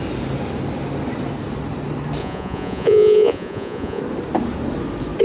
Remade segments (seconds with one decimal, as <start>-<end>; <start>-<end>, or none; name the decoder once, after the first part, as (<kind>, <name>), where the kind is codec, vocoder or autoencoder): 2.2-4.0 (vocoder, Vocos)